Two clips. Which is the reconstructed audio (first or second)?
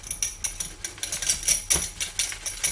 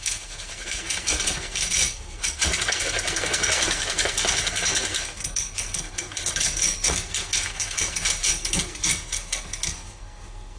second